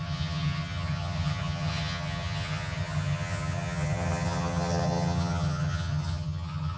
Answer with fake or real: fake